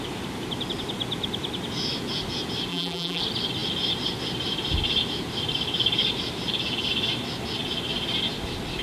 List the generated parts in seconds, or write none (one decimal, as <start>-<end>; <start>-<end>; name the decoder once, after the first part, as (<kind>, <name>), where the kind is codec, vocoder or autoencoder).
2.7-3.2 (vocoder, BigVGAN v2)